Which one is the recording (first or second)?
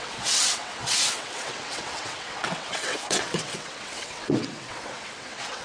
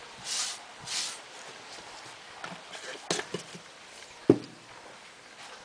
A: second